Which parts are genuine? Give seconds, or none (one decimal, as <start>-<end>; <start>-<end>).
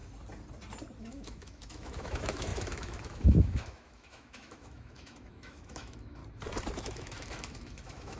0.0-1.0; 6.2-6.8